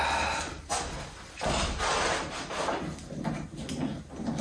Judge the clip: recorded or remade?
recorded